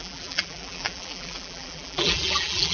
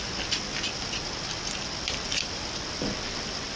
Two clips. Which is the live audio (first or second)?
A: second